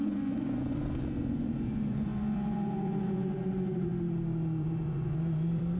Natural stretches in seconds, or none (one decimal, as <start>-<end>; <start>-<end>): 3.9-4.6